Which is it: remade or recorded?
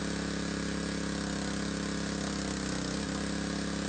recorded